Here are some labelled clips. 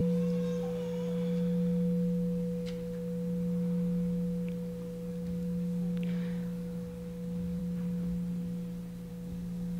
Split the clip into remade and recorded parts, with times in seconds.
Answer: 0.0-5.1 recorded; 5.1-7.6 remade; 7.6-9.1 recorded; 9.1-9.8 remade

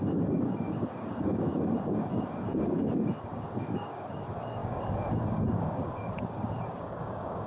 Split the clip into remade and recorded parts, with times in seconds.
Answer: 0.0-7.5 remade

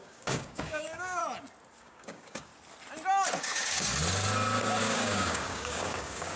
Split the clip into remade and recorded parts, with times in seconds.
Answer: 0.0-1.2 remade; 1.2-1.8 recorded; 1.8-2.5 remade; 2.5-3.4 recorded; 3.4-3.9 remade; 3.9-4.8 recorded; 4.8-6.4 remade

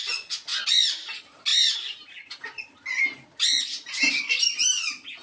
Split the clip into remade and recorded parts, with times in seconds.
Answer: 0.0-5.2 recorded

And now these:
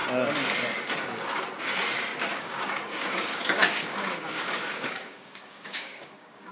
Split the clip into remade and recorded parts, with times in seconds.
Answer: 0.0-2.3 recorded; 2.3-6.5 remade

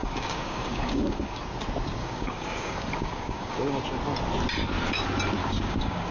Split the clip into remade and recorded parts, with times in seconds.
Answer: 0.0-1.4 remade; 1.4-2.0 recorded; 2.0-3.8 remade; 3.8-5.4 recorded; 5.4-6.1 remade

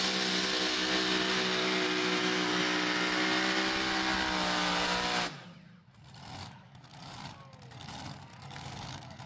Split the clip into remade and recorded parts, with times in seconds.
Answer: 0.0-6.4 recorded; 6.4-7.9 remade; 7.9-8.3 recorded; 8.3-9.3 remade